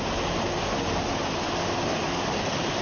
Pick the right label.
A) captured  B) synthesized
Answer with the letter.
A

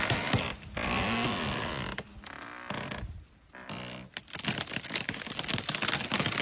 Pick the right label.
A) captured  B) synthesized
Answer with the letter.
A